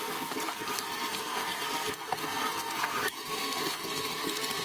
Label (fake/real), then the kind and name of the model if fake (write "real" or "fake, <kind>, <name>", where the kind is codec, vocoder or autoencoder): fake, codec, SNAC